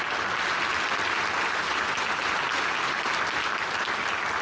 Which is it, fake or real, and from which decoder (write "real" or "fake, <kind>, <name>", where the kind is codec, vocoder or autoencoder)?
real